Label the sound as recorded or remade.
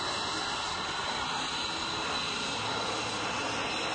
recorded